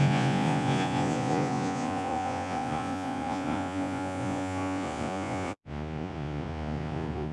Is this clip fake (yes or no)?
yes